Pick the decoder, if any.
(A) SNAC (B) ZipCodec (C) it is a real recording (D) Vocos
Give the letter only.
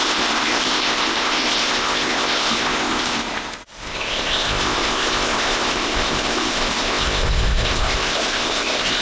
B